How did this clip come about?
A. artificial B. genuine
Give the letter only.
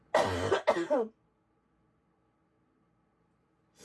B